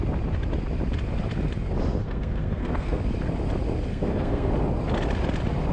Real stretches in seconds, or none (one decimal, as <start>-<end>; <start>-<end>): 0.0-2.0; 3.0-3.9; 4.5-5.7